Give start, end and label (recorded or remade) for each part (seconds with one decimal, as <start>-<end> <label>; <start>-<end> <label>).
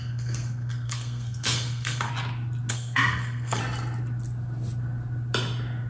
0.0-2.1 remade; 2.1-2.7 recorded; 2.7-3.6 remade; 3.6-5.9 recorded